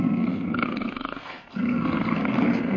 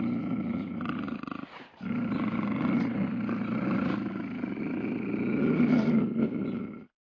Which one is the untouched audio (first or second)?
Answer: second